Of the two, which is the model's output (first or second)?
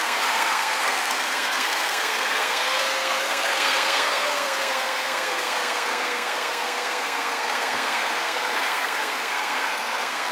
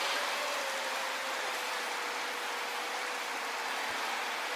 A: first